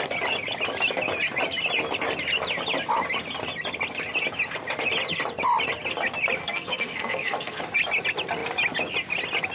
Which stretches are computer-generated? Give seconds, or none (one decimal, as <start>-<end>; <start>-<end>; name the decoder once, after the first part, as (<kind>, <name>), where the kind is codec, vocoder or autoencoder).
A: 6.4-7.6 (codec, SNAC)